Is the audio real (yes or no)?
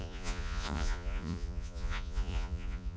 no